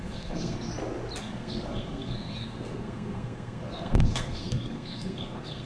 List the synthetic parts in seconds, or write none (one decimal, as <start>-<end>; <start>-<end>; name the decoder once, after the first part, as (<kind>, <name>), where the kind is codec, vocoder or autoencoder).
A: 0.0-0.7 (codec, SNAC); 1.2-5.7